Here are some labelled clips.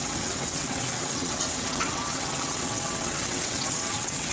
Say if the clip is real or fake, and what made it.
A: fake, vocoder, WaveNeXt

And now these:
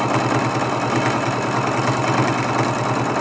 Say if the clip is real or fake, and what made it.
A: real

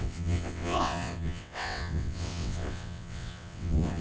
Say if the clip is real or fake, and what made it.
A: fake, vocoder, WaveNeXt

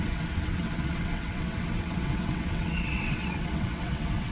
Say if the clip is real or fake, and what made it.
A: fake, vocoder, WaveNeXt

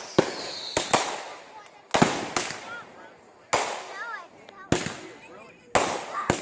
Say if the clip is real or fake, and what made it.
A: real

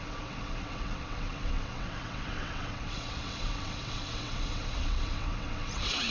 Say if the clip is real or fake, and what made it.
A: fake, vocoder, WaveNeXt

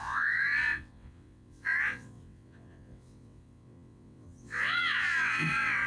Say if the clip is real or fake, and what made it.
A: fake, vocoder, WaveNeXt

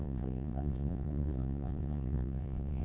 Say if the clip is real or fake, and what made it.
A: fake, vocoder, WaveNeXt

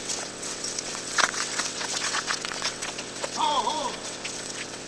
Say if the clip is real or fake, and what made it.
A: fake, vocoder, WaveNeXt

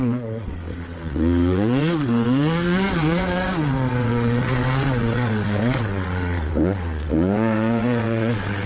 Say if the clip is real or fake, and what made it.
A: fake, vocoder, WaveNeXt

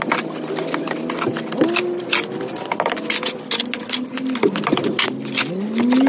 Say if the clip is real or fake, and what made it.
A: real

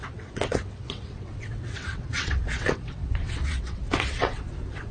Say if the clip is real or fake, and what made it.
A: fake, vocoder, WaveNeXt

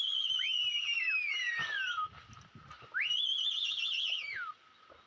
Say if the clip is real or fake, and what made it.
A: real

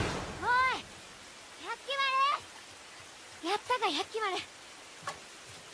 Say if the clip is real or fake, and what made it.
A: real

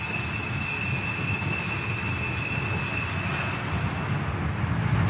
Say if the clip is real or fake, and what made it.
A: real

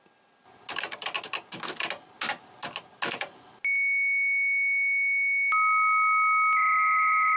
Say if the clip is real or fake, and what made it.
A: real